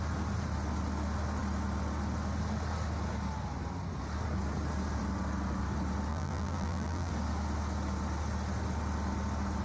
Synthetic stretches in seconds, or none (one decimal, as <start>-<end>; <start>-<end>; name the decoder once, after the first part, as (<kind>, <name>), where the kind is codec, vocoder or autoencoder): 6.1-7.1 (vocoder, BigVGAN v2)